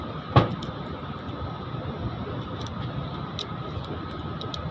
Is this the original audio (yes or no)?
yes